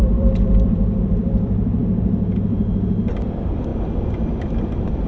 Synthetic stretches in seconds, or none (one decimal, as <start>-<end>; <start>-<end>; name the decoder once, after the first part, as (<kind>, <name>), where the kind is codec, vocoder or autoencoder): 0.0-3.7 (vocoder, BigVGAN v2); 4.3-5.1